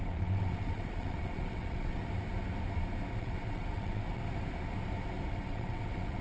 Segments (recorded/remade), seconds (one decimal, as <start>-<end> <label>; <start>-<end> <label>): 0.0-2.0 remade; 2.0-3.2 recorded; 3.2-4.2 remade; 4.2-5.3 recorded; 5.3-6.2 remade